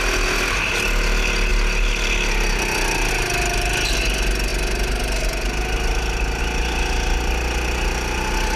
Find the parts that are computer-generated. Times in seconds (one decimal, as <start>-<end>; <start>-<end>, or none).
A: none